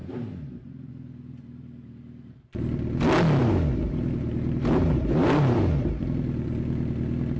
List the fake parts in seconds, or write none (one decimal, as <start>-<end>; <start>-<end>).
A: 0.0-0.9; 3.4-6.0